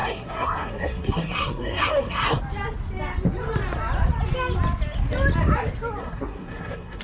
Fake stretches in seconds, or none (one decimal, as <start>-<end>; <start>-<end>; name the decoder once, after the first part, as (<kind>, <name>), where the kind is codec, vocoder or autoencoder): 0.0-2.4 (codec, SNAC); 6.0-7.0

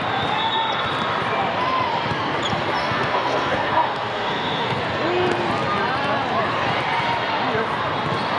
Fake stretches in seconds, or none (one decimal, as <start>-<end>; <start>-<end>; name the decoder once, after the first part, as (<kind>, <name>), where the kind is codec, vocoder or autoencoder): 2.8-4.8 (codec, SNAC)

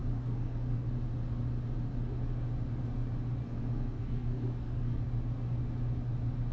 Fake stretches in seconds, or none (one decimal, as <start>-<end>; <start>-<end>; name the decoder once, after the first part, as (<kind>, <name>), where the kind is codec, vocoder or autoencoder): 0.0-0.9 (codec, SNAC); 3.4-5.0

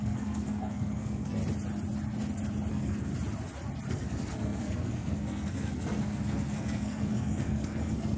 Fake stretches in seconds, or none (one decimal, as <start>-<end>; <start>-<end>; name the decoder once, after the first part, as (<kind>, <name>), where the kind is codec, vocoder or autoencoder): 0.0-1.4 (codec, SNAC); 2.7-3.1; 3.9-8.2

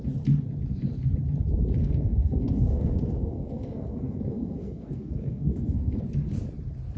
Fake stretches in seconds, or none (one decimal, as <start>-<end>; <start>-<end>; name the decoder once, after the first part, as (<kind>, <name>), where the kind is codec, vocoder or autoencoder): 1.8-6.0 (codec, SNAC)

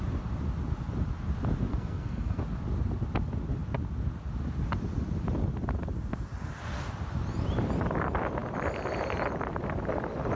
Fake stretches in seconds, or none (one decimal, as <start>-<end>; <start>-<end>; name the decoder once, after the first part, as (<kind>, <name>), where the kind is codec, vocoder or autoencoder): 1.7-2.4 (codec, SNAC)

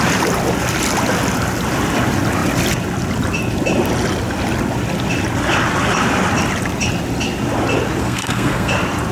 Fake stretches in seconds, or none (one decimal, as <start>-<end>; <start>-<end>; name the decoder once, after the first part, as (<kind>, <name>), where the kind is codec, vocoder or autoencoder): 8.0-8.7 (codec, SNAC)

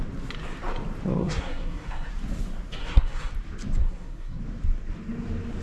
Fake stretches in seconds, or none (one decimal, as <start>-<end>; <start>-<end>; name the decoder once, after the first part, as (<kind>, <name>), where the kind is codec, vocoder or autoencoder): 1.2-2.1 (codec, SNAC); 2.8-3.3; 3.8-4.4